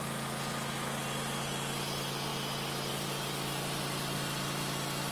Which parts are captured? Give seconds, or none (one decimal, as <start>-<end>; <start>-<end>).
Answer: 0.0-5.1